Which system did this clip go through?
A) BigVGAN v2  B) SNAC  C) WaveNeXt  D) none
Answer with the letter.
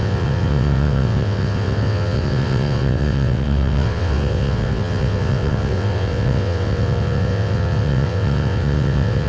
C